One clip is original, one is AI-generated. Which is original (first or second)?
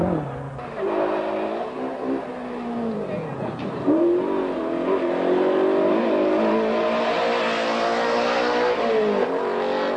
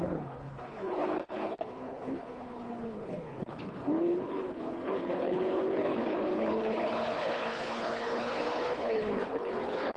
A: first